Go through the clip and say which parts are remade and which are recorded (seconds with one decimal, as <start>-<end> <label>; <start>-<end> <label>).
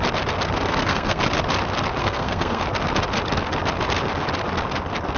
0.0-0.7 recorded; 0.7-1.2 remade; 1.2-2.0 recorded; 2.0-2.6 remade; 2.6-5.2 recorded